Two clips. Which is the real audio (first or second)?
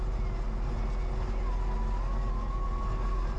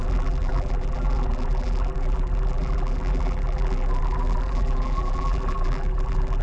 first